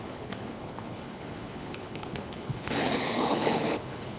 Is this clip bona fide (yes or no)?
no